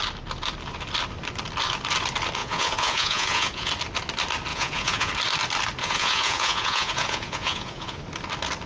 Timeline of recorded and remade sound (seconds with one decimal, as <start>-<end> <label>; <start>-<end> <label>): 0.0-2.4 recorded; 2.4-3.7 remade; 3.7-4.5 recorded; 4.5-5.1 remade; 5.1-5.8 recorded; 5.8-8.0 remade; 8.0-8.7 recorded